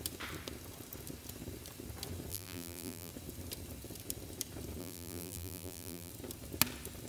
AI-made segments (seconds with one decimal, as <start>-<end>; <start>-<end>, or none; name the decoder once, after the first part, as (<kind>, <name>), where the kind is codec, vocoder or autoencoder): 2.3-3.1 (vocoder, BigVGAN v2); 4.8-6.1